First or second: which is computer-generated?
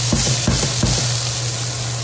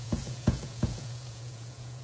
second